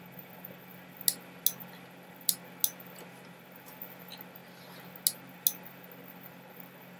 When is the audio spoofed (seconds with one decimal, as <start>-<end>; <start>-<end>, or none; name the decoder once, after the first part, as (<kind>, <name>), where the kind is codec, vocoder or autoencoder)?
none